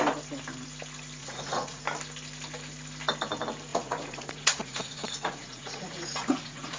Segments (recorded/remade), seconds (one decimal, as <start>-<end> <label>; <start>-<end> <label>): 0.0-1.2 recorded; 1.2-1.8 remade; 1.8-3.7 recorded; 3.7-6.8 remade

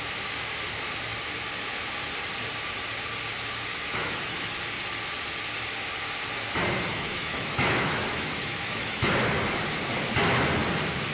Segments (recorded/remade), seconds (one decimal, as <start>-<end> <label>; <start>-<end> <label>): 0.0-3.7 recorded; 3.7-4.6 remade; 4.6-6.9 recorded; 6.9-9.1 remade; 9.1-11.1 recorded

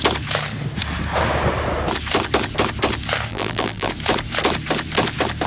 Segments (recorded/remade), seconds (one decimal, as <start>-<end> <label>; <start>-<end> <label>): 0.0-3.3 recorded; 3.3-3.9 remade; 3.9-5.5 recorded

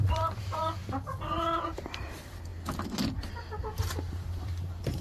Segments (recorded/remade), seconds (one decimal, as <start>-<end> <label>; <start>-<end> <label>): 0.0-0.8 remade; 0.8-2.1 recorded; 2.1-2.5 remade; 2.5-3.8 recorded; 3.8-5.0 remade